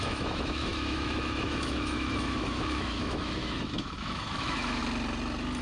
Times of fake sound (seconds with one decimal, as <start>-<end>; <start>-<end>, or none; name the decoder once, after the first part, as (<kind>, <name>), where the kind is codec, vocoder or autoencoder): 0.0-4.8 (autoencoder, DAC-VAE)